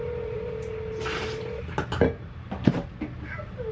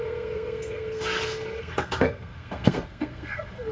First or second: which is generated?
second